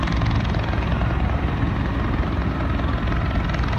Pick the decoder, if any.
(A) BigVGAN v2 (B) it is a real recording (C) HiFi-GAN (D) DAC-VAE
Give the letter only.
B